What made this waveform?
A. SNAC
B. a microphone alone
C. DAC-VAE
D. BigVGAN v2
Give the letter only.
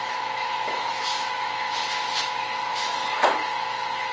C